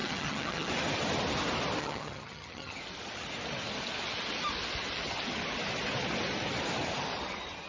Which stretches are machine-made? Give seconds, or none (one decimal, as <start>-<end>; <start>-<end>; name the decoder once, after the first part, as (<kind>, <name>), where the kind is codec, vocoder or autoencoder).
0.0-0.7 (vocoder, HiFi-GAN); 1.8-2.8